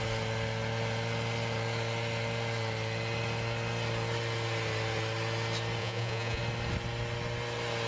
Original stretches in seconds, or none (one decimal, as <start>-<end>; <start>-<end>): 0.0-5.8; 6.4-7.9